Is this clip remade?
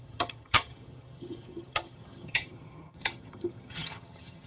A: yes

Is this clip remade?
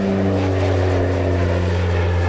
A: no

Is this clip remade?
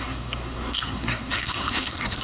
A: yes